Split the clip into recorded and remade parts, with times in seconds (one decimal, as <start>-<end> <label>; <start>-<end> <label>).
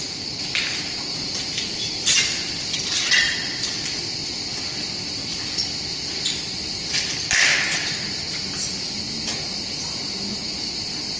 0.0-11.2 recorded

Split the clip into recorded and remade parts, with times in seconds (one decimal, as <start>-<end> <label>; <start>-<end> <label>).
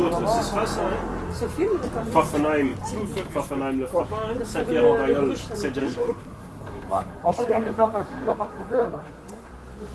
0.0-5.8 recorded; 5.8-9.5 remade; 9.5-9.9 recorded